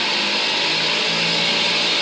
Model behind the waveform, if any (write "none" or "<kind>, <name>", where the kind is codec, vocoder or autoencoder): none